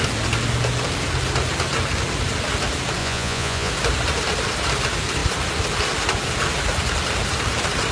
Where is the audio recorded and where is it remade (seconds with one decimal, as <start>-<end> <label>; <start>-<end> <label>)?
0.0-3.0 recorded; 3.0-3.7 remade; 3.7-7.9 recorded